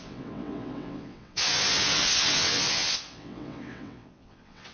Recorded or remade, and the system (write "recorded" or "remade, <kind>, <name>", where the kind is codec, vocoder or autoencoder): remade, vocoder, WaveNeXt